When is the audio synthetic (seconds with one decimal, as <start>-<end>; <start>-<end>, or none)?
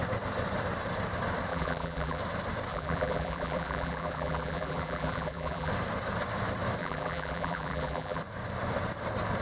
1.5-2.2; 2.7-5.7; 6.8-8.2